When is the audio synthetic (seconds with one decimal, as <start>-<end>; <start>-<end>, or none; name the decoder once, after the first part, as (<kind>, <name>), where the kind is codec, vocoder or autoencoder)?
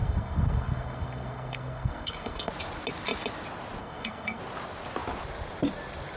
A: 0.0-2.5 (codec, SNAC); 3.8-4.4